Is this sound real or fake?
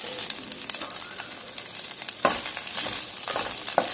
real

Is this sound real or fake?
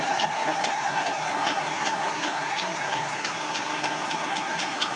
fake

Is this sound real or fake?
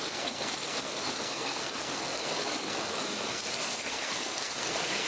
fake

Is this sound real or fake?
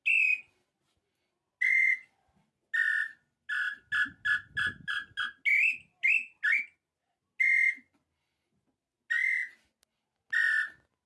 real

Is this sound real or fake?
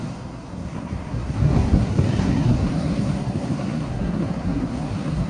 fake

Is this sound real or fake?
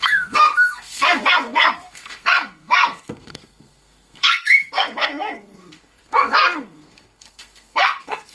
fake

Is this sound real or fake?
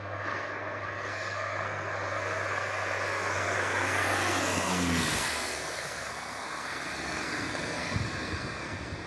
fake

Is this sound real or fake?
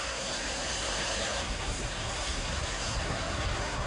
fake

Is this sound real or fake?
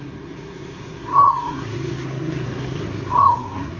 fake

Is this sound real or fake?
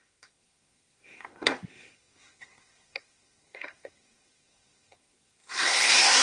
fake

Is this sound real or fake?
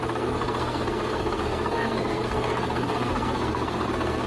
fake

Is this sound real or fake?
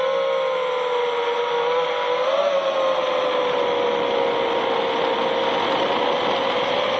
real